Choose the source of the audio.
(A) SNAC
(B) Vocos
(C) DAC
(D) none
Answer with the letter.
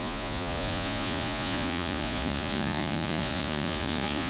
B